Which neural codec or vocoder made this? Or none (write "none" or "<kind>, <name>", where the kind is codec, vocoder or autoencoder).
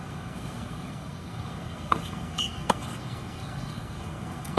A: codec, SNAC